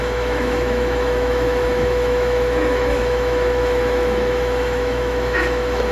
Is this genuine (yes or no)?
no